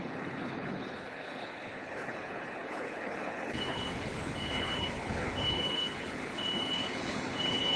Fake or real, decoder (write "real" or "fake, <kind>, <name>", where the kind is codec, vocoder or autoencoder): fake, codec, HILCodec